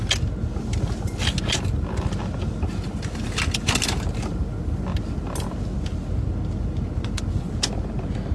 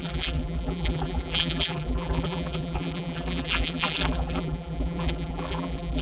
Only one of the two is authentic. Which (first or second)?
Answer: first